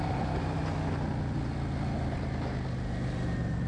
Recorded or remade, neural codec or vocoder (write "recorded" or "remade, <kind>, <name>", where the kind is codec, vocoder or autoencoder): recorded